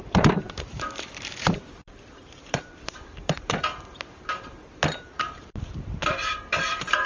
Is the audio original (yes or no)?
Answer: no